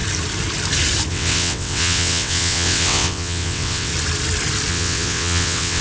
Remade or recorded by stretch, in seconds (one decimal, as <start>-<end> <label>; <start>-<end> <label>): 0.0-1.1 recorded; 1.1-3.9 remade; 3.9-4.7 recorded; 4.7-5.8 remade